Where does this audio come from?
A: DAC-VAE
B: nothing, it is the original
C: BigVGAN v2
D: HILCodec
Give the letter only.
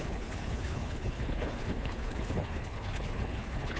D